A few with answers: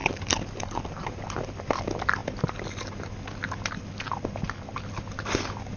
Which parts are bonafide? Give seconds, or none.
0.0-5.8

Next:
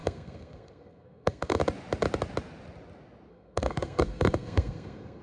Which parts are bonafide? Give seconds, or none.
1.6-3.3

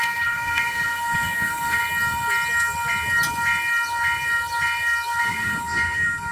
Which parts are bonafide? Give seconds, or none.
1.8-5.2

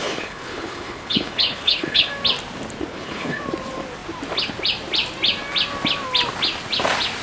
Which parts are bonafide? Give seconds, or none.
2.1-2.9; 3.4-7.2

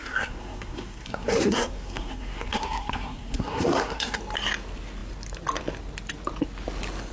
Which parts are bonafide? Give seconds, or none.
4.2-7.1

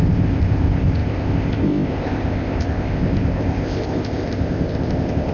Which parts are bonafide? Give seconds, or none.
none